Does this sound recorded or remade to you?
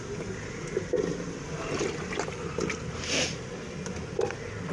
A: recorded